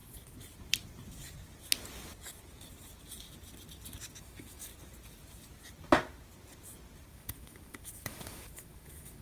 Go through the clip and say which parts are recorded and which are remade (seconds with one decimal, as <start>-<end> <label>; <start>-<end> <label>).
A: 0.0-4.2 recorded; 4.2-4.7 remade; 4.7-7.1 recorded; 7.1-9.2 remade